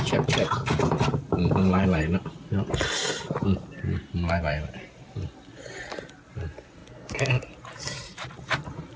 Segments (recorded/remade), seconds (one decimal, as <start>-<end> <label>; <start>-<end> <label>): 0.0-6.8 remade; 6.8-7.4 recorded; 7.4-9.0 remade